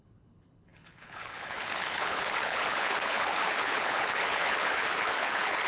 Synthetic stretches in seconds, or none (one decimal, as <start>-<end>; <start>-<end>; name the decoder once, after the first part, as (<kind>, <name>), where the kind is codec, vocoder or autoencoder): 0.0-5.7 (codec, HILCodec)